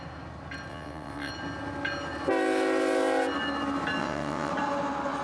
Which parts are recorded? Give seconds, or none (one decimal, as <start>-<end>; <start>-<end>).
0.0-0.7; 1.3-4.0; 4.5-5.2